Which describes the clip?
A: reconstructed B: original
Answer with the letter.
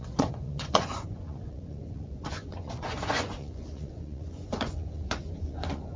A